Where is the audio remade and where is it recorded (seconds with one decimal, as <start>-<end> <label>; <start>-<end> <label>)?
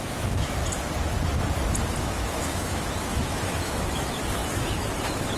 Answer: 0.0-0.6 remade; 0.6-2.0 recorded; 2.0-5.4 remade